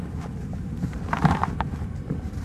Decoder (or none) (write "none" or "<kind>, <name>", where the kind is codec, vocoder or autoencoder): vocoder, BigVGAN v2